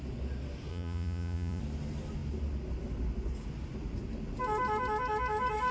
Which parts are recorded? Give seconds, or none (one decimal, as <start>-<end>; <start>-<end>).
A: 0.0-0.7; 1.6-5.7